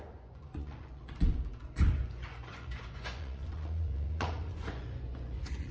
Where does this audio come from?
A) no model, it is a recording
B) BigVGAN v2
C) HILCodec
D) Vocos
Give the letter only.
D